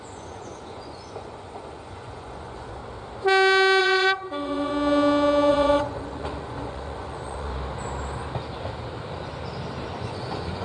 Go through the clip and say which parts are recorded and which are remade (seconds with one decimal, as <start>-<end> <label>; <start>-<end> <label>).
0.0-2.8 remade; 2.8-3.8 recorded; 3.8-4.7 remade; 4.7-5.5 recorded; 5.5-7.5 remade; 7.5-10.0 recorded; 10.0-10.6 remade